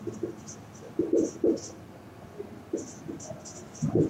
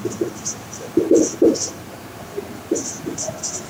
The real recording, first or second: first